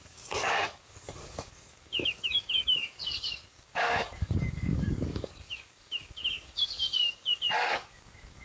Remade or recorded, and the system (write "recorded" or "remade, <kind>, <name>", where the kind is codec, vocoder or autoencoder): remade, codec, DAC